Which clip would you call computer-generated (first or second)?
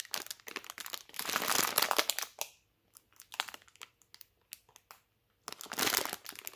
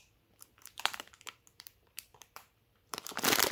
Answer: second